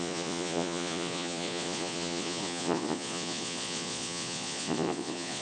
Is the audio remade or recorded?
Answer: remade